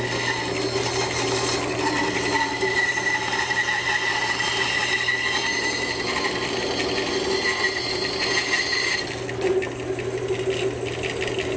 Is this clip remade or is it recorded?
recorded